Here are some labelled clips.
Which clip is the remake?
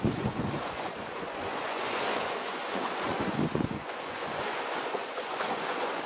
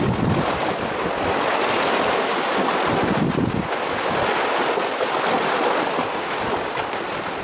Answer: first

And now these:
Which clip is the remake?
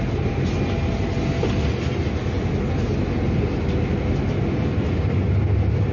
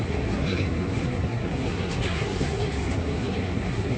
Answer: second